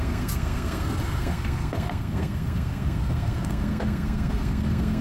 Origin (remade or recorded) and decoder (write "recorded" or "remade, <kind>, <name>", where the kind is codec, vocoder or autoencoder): remade, codec, SNAC